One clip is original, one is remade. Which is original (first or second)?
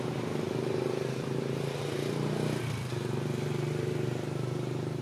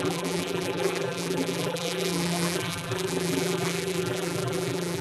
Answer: first